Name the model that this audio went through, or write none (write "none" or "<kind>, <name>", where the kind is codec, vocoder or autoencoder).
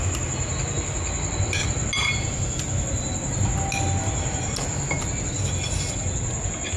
none